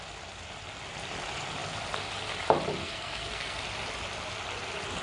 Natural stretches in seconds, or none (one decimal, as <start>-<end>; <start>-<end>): 0.0-2.8; 3.6-5.0